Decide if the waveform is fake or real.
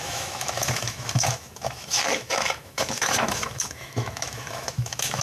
fake